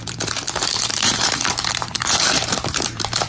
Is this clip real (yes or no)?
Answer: no